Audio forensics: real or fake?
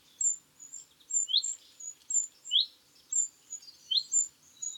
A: real